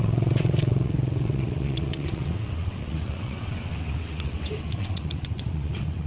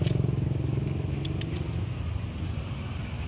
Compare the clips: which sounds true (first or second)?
second